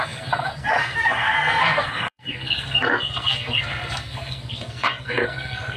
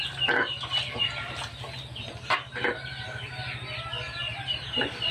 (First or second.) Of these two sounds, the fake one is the first